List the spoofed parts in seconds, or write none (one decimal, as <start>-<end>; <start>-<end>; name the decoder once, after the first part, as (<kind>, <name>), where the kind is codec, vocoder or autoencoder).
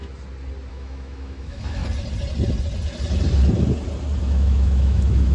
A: 0.7-1.8 (autoencoder, DAC-VAE); 4.2-5.3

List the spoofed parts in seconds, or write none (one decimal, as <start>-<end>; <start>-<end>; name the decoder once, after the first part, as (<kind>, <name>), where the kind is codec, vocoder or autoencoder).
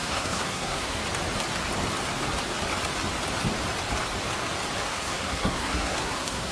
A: 0.0-1.0 (codec, SNAC); 4.9-6.5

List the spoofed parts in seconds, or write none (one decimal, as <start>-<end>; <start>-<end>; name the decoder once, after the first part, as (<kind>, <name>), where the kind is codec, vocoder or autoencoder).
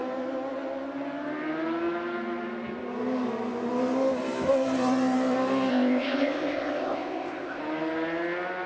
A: 5.7-7.6 (codec, ZipCodec)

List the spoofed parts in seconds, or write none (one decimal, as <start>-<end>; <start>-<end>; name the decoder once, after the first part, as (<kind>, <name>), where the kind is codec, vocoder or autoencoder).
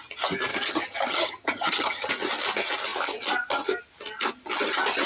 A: 0.5-2.1 (vocoder, HiFi-GAN)